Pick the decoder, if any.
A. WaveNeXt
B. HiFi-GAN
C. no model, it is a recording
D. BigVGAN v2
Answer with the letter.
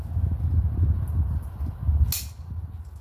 C